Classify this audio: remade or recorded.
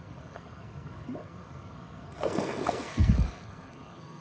remade